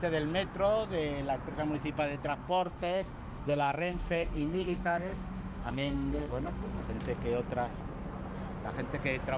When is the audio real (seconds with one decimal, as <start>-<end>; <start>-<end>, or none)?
0.0-2.4; 6.8-9.4